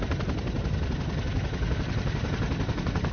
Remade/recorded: recorded